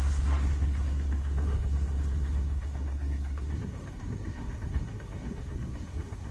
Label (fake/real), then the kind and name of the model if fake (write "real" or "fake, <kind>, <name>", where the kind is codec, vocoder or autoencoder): fake, codec, SNAC